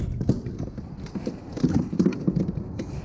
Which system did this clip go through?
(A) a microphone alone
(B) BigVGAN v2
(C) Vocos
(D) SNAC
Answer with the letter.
A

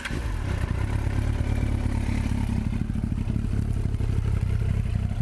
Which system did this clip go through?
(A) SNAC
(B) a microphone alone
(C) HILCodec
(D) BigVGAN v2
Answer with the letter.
B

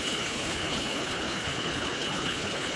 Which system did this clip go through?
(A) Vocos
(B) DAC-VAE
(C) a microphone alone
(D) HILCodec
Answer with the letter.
D